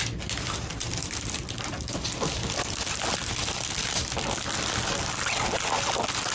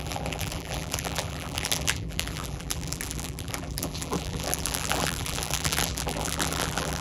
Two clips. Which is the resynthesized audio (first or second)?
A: second